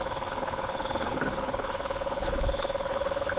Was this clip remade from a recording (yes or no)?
yes